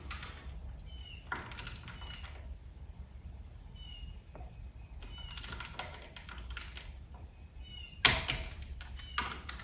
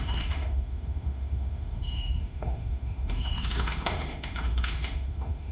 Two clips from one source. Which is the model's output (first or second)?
second